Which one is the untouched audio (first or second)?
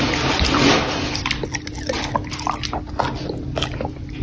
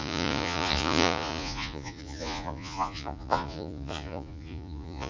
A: first